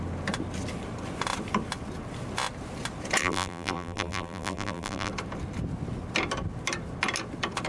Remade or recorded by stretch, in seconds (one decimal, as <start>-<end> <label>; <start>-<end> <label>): 0.0-3.2 recorded; 3.2-5.1 remade; 5.1-7.7 recorded